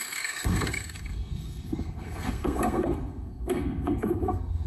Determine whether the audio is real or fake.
fake